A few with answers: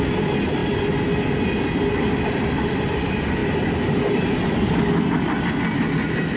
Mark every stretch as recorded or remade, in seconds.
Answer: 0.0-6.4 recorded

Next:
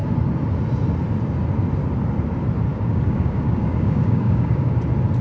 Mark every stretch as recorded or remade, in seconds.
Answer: 0.0-2.7 recorded; 2.7-4.7 remade; 4.7-5.2 recorded

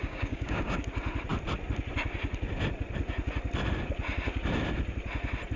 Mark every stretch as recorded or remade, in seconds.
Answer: 0.0-0.8 remade; 0.8-5.6 recorded

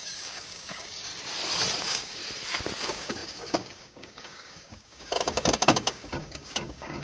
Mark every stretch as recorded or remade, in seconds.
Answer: 0.0-1.1 remade; 1.1-1.8 recorded; 1.8-2.2 remade; 2.2-2.8 recorded; 2.8-7.0 remade

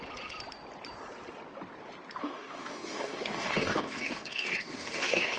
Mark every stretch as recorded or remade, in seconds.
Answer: 0.0-2.2 recorded; 2.2-5.4 remade

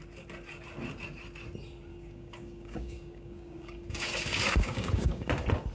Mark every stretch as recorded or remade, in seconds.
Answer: 0.0-1.9 recorded; 1.9-5.3 remade; 5.3-5.7 recorded

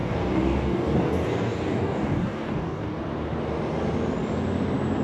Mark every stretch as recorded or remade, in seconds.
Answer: 0.0-3.0 remade; 3.0-5.0 recorded

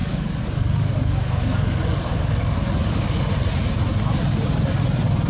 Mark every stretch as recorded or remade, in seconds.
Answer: 0.0-3.2 remade; 3.2-5.3 recorded